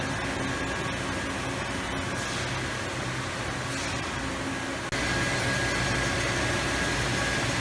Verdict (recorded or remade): recorded